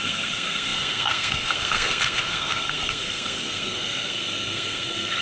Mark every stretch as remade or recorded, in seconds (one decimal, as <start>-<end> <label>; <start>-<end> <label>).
0.0-5.2 remade